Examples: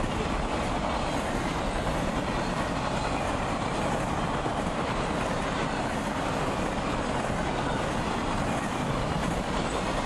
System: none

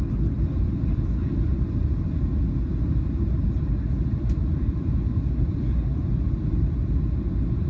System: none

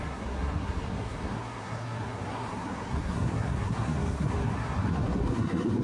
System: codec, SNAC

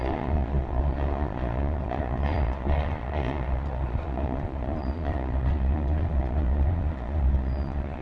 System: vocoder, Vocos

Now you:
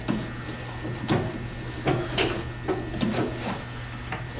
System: none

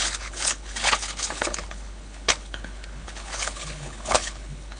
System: codec, HILCodec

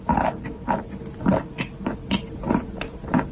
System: none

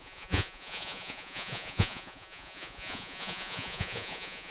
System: vocoder, Vocos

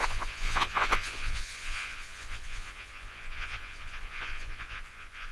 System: vocoder, Vocos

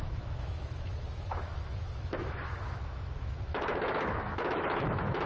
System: autoencoder, DAC-VAE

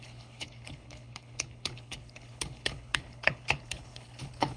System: codec, HILCodec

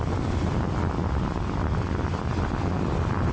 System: none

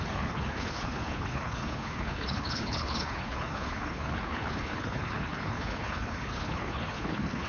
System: codec, HILCodec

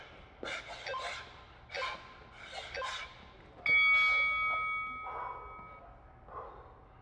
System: none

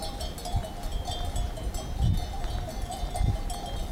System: none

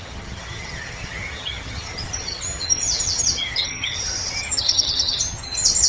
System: vocoder, HiFi-GAN